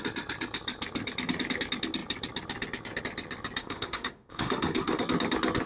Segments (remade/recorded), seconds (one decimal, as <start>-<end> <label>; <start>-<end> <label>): 0.0-3.6 recorded; 3.6-5.0 remade; 5.0-5.7 recorded